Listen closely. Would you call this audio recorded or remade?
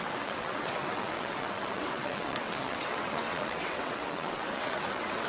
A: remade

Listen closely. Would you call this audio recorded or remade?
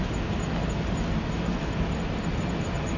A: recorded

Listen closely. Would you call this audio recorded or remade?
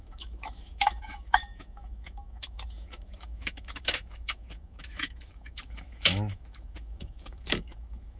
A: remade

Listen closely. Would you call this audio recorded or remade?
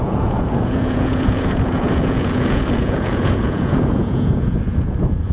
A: remade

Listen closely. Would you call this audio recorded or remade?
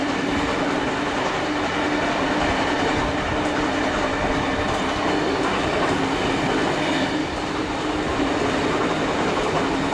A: recorded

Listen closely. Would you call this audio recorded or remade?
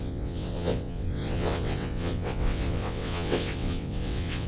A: remade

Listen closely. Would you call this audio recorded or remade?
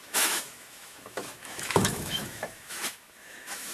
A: remade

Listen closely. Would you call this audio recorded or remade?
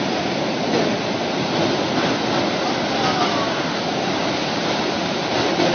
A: remade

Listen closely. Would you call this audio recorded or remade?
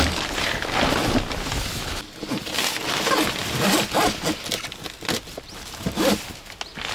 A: recorded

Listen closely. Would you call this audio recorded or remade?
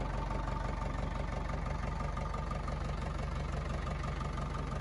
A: recorded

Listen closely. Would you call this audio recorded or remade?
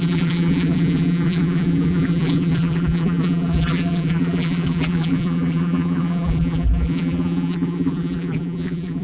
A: remade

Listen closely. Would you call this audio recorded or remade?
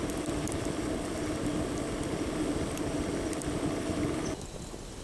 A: recorded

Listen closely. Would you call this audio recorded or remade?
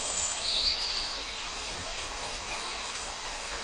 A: remade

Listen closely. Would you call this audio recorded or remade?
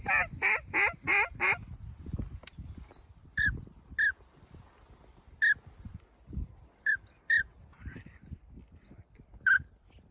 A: remade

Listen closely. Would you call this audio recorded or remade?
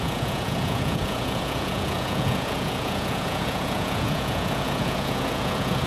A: remade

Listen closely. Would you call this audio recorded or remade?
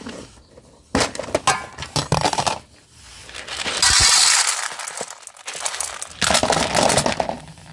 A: recorded